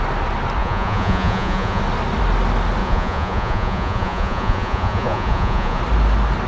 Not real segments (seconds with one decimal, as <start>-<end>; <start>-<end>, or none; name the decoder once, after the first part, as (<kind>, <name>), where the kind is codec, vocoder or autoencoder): 0.6-1.8 (vocoder, Vocos); 2.8-5.8

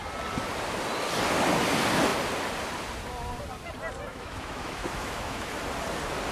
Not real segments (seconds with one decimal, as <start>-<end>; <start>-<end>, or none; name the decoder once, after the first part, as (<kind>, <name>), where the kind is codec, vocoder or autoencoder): 4.1-5.5 (autoencoder, DAC-VAE)